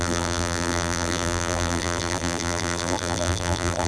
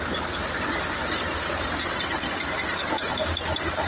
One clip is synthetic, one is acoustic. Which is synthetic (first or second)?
first